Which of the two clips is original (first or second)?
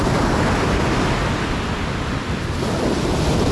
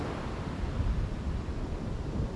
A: first